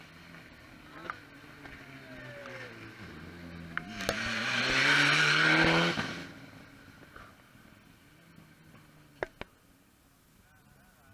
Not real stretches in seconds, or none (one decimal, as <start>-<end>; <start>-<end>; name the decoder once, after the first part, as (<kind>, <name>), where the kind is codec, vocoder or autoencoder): none